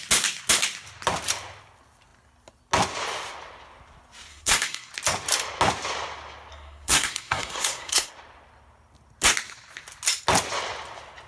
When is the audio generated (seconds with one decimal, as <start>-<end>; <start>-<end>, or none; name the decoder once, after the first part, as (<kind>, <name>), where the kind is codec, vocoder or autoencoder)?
4.3-4.9 (codec, SNAC); 6.5-8.1